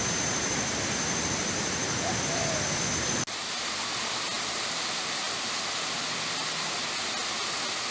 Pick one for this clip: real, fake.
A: real